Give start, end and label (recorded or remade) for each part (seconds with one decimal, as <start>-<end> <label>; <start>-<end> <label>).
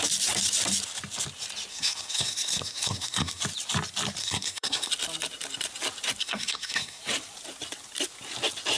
0.0-1.7 recorded; 1.7-3.4 remade; 3.4-4.2 recorded; 4.2-4.9 remade; 4.9-6.2 recorded; 6.2-7.0 remade; 7.0-8.8 recorded